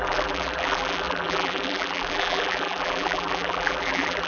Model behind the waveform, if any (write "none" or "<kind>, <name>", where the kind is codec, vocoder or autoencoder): vocoder, BigVGAN v2